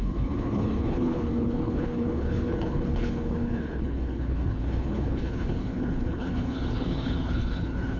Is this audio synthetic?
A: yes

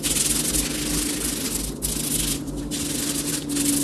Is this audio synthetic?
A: no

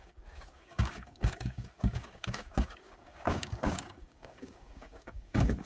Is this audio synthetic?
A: yes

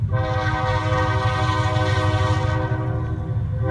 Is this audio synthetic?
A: no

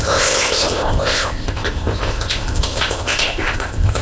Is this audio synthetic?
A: yes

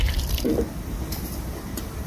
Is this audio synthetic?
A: yes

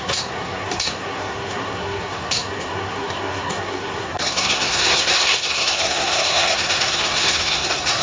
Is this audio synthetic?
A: yes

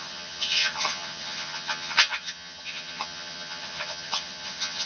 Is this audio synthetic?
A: yes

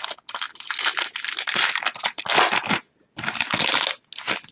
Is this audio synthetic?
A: no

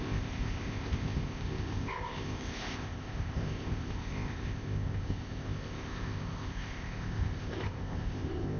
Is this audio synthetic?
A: yes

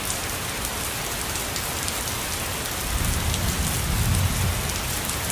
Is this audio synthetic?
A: no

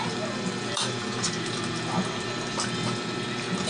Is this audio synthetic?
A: no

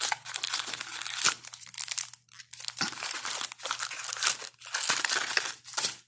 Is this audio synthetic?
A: no